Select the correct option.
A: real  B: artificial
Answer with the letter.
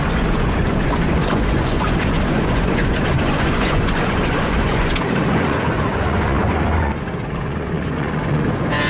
B